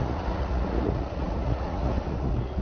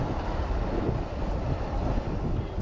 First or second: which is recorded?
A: second